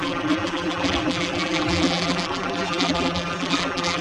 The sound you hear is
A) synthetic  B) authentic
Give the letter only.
A